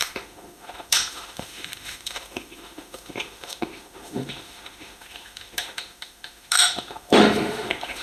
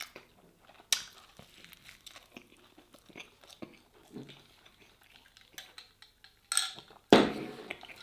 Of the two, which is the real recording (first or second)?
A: second